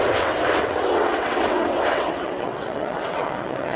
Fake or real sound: fake